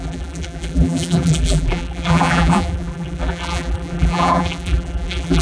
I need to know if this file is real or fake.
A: fake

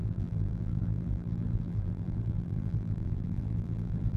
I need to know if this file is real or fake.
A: fake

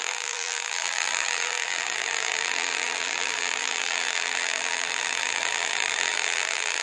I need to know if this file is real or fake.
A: fake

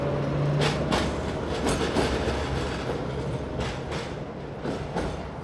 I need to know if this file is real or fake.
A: real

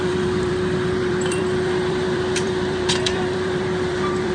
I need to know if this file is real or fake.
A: fake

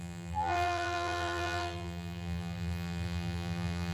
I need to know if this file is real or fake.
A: fake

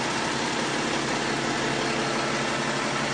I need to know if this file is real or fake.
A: real